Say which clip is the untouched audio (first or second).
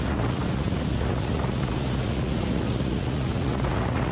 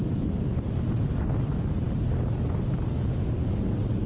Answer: second